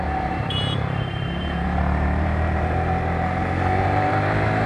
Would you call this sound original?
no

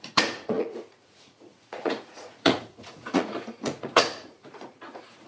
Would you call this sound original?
no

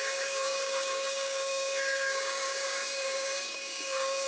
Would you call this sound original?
no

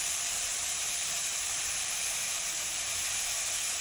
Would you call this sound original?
no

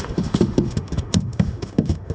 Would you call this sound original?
no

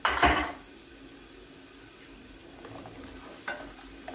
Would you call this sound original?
yes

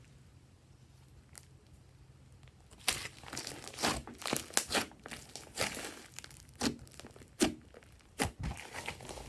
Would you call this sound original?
yes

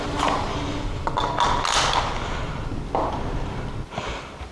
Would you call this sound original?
yes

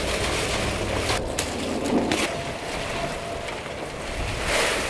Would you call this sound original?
yes